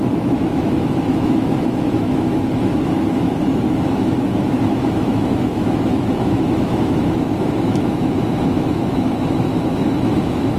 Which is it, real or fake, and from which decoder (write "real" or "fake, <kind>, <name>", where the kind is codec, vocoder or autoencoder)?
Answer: fake, autoencoder, DAC-VAE